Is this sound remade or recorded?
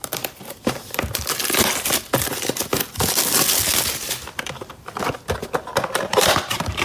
recorded